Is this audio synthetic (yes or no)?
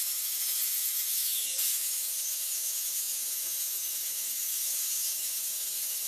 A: yes